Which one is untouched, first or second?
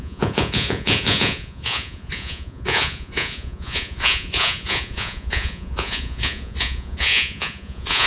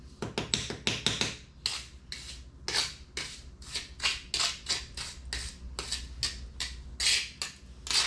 second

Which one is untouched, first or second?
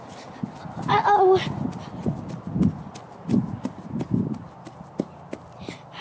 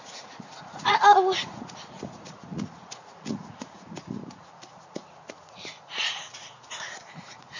first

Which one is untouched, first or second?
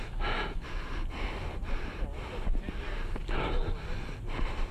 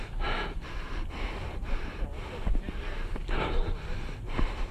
first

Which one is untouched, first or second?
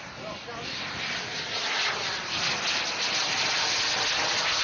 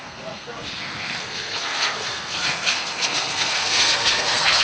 first